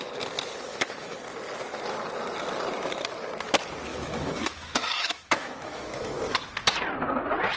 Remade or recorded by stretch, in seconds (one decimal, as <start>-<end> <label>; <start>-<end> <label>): 0.0-0.7 recorded; 0.7-1.2 remade; 1.2-3.9 recorded; 3.9-6.2 remade; 6.2-7.6 recorded